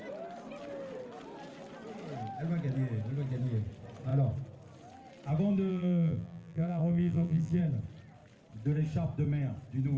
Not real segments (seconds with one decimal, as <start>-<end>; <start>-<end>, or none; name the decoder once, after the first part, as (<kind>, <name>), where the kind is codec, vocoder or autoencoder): 5.7-7.6 (vocoder, BigVGAN v2)